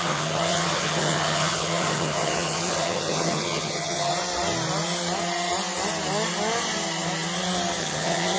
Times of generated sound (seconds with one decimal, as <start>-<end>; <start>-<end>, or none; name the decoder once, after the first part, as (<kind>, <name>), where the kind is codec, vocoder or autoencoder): 0.0-4.1 (vocoder, HiFi-GAN); 7.8-8.4